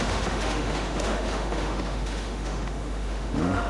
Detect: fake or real fake